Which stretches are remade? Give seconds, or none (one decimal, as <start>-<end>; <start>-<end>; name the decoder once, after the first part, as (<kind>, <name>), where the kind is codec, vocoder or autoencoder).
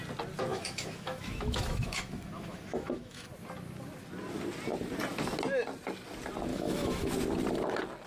0.5-3.3 (autoencoder, DAC-VAE); 6.5-7.1